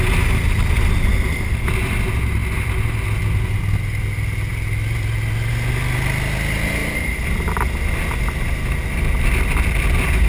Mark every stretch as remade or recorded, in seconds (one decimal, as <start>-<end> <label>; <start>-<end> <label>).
0.0-10.3 recorded